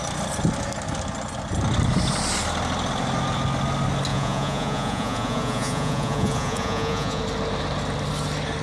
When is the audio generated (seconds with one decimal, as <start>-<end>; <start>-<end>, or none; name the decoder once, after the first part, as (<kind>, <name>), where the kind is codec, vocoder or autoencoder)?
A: 4.1-7.2 (vocoder, Vocos)